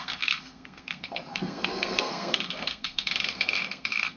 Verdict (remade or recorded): remade